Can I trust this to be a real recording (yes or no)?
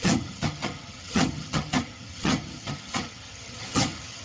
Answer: no